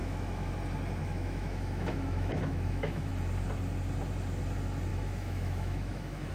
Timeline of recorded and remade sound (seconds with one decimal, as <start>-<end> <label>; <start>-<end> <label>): 0.0-0.5 remade; 0.5-1.0 recorded; 1.0-3.1 remade; 3.1-4.9 recorded; 4.9-6.3 remade